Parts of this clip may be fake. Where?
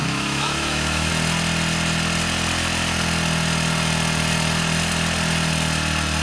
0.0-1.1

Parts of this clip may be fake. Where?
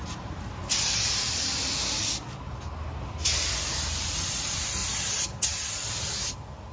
0.0-1.5; 3.7-4.8; 6.2-6.7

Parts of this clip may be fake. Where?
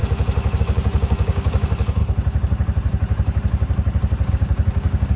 0.6-2.0; 4.3-5.2